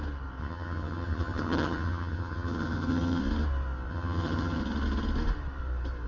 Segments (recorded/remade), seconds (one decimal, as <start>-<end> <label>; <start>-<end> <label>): 0.0-0.4 recorded; 0.4-3.2 remade; 3.2-3.9 recorded; 3.9-4.6 remade; 4.6-6.1 recorded